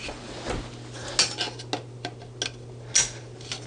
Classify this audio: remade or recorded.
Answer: recorded